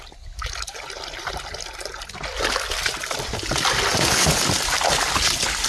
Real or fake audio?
real